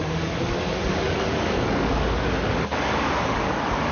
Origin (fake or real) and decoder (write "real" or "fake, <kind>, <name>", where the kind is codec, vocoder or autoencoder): fake, codec, DAC